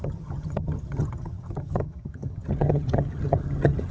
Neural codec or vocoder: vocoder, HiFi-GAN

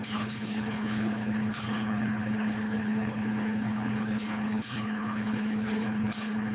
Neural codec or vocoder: codec, HILCodec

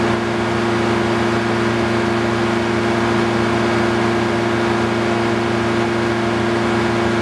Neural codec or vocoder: none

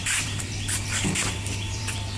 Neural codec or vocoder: vocoder, BigVGAN v2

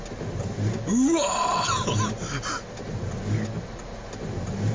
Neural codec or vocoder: none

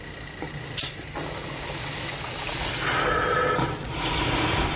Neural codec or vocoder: none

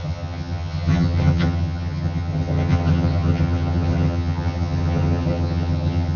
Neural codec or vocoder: vocoder, HiFi-GAN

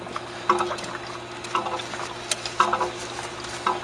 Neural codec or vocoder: none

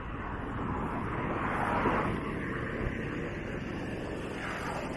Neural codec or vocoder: none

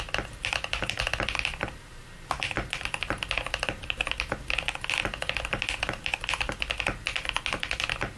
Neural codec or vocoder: none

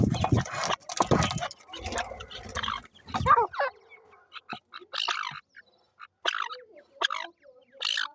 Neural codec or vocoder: none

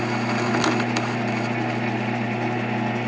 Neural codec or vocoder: none